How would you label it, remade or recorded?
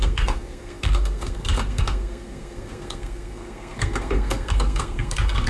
remade